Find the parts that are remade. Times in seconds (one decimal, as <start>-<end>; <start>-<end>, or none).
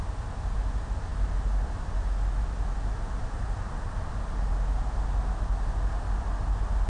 none